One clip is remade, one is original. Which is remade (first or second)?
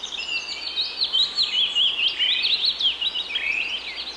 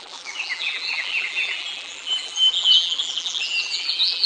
second